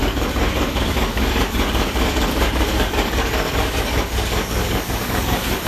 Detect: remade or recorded remade